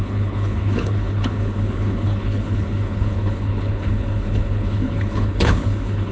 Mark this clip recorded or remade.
remade